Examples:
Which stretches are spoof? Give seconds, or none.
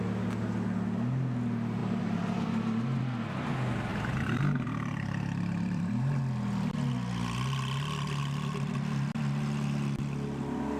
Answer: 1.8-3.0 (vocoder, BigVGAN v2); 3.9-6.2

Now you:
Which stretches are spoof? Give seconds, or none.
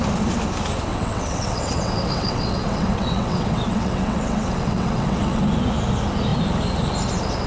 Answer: 0.9-5.4 (vocoder, WaveNeXt)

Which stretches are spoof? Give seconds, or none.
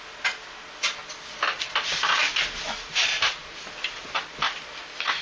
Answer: 1.3-2.1 (vocoder, BigVGAN v2); 3.0-3.6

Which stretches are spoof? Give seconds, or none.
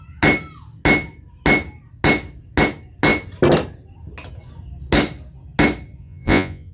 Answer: 6.0-6.7 (vocoder, Vocos)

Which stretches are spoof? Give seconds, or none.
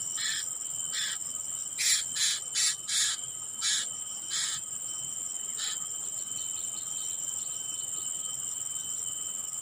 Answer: none